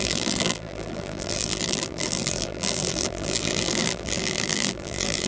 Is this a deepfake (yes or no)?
yes